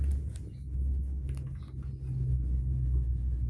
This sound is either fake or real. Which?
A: real